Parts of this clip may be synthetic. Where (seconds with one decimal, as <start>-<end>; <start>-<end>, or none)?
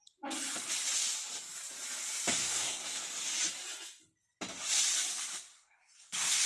2.4-3.0; 5.5-6.5